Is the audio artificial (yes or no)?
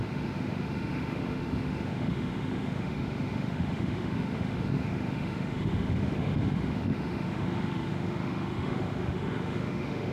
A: yes